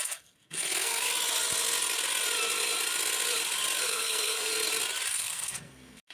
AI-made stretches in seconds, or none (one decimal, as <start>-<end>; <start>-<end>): 0.0-1.1; 3.8-4.5; 5.1-6.1